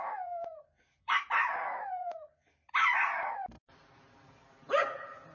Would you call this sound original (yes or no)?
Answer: no